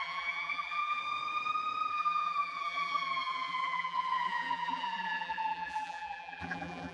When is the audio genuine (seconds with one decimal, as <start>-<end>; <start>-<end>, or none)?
1.0-1.9

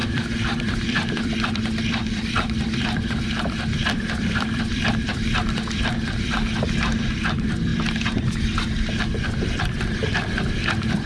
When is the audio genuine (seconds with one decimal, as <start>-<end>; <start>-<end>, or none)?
7.7-9.6; 10.0-10.5

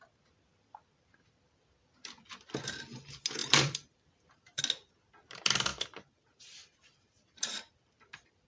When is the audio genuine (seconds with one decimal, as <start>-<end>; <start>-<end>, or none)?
0.0-3.4; 4.6-5.7; 7.7-8.5

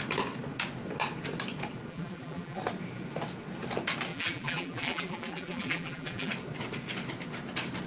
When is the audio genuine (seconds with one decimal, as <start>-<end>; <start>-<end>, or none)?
0.0-1.9; 2.6-4.1; 6.3-7.9

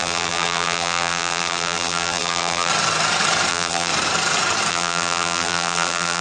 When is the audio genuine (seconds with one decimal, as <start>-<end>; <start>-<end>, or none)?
2.7-3.5; 3.9-4.7

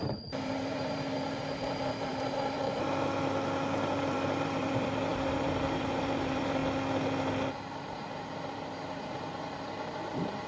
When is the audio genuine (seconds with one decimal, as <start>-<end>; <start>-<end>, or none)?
2.7-3.8; 6.6-7.5

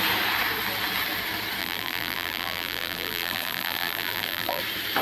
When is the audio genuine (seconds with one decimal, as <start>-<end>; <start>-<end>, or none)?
0.0-1.6; 4.6-5.0